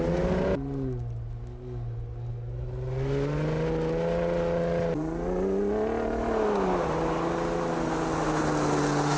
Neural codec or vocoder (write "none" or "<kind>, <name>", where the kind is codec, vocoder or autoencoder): none